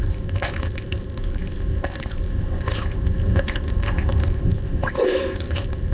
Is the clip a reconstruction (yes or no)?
yes